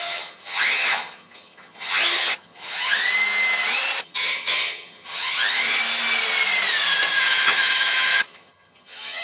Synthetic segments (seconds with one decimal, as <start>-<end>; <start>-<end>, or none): 0.0-3.0; 4.0-5.8; 7.2-9.2